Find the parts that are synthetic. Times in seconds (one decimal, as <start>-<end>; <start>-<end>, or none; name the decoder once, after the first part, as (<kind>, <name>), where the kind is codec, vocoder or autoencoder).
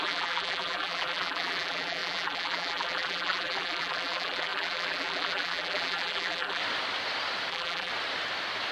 0.0-6.6 (vocoder, BigVGAN v2); 7.5-7.9